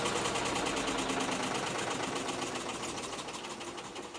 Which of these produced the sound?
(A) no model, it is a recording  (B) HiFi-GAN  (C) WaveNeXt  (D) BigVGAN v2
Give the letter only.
A